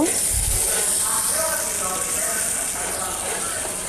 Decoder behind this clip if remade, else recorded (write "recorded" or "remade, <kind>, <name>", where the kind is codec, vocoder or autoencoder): recorded